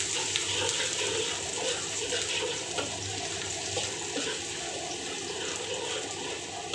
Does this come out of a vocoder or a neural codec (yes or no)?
no